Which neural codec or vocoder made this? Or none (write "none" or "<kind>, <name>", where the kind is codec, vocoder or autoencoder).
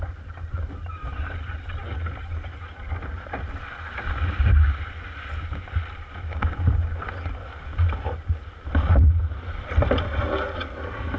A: none